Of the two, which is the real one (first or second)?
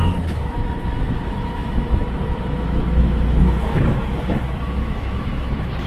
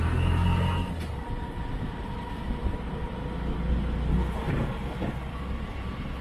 second